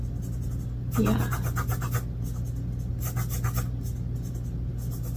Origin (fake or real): real